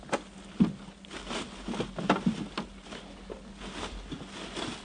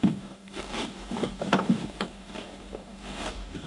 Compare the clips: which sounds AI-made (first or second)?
second